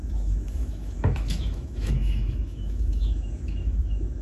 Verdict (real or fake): fake